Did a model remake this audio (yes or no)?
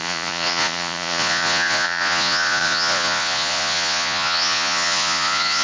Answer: yes